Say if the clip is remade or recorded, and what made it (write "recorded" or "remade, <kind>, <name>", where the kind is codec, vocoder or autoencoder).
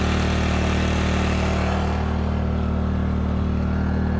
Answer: recorded